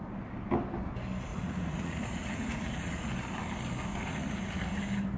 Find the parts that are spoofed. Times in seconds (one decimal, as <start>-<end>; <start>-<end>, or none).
1.3-3.1; 3.9-4.8